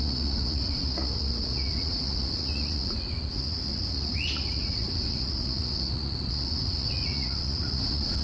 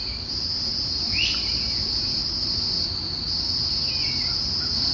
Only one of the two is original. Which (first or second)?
second